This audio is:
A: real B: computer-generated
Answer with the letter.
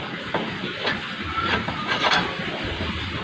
A